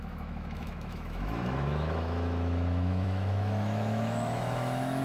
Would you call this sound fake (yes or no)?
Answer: yes